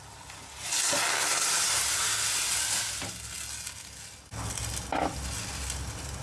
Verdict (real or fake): real